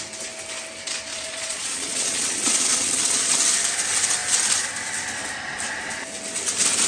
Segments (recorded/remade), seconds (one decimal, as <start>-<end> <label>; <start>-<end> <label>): 0.0-1.1 recorded; 1.1-3.3 remade; 3.3-6.9 recorded